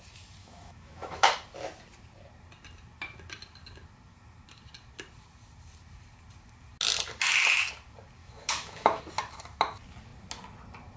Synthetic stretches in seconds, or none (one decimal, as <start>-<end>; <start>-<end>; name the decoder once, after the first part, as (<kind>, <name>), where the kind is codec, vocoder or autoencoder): 0.4-1.3 (autoencoder, DAC-VAE); 8.2-9.0